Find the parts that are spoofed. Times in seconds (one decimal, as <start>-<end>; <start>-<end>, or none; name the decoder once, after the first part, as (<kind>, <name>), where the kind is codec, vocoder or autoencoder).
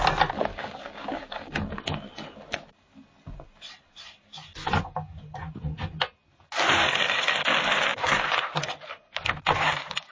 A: 0.5-1.6 (codec, DAC)